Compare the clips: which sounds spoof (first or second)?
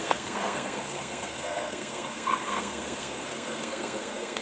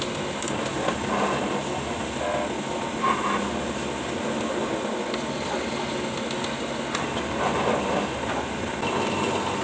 first